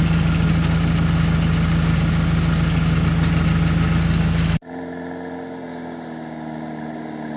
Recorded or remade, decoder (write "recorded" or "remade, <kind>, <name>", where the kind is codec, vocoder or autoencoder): recorded